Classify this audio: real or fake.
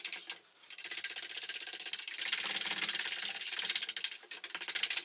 real